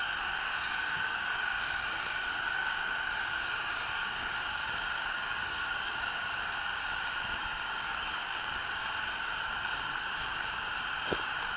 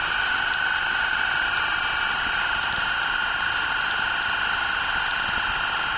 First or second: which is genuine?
second